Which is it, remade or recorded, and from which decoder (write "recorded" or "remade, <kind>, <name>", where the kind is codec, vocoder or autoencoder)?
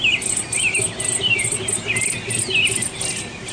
recorded